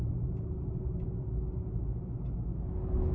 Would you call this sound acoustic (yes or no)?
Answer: yes